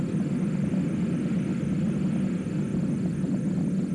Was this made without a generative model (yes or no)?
yes